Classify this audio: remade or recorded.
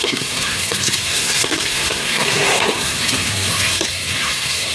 remade